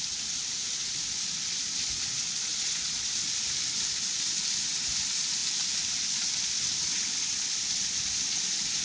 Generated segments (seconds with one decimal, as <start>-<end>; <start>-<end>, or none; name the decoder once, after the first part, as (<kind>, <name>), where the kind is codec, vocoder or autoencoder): 2.5-3.1 (vocoder, Vocos)